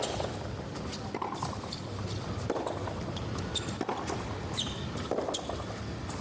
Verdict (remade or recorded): recorded